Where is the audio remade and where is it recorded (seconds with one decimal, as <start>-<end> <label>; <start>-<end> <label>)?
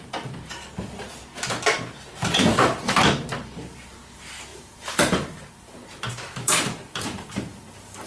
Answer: 0.0-2.1 recorded; 2.1-3.0 remade; 3.0-4.5 recorded; 4.5-8.1 remade